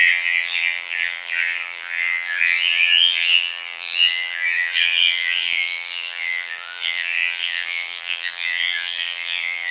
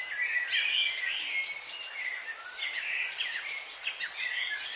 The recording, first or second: second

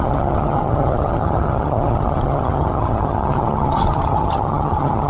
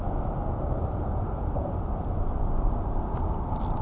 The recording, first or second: second